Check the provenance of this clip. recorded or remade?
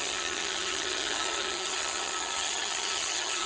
remade